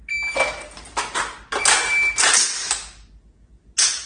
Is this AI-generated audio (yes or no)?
no